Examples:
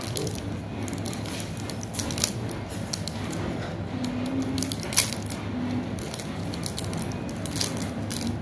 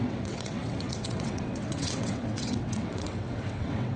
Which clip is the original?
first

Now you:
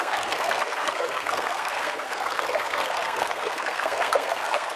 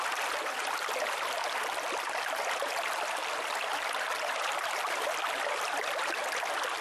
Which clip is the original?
second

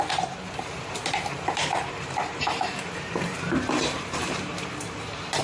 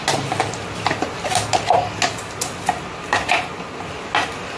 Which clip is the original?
second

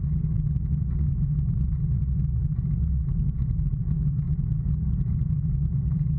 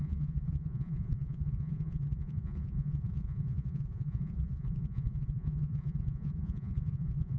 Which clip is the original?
first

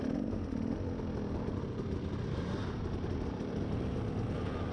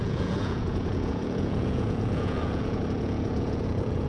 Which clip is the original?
first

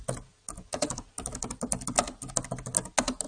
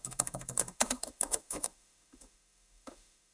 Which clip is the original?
first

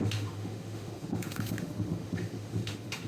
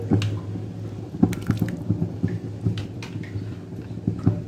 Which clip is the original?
second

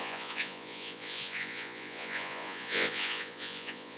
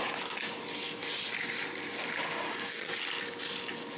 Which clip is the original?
second